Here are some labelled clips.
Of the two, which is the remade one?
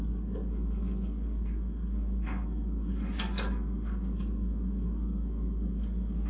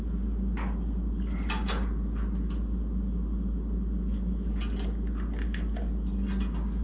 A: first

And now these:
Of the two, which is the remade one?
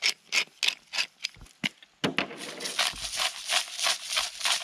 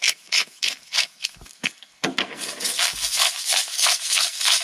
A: second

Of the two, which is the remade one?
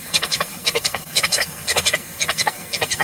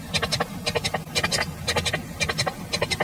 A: first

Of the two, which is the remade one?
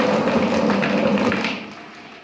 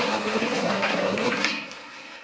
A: second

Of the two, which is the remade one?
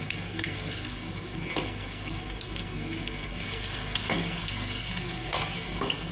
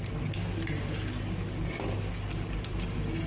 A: first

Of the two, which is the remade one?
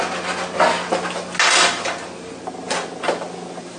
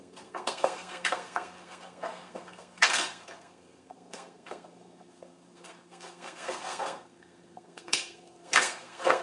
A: second